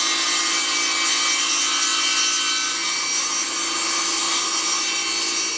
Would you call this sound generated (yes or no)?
no